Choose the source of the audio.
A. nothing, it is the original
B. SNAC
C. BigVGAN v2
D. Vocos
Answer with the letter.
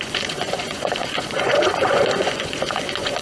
D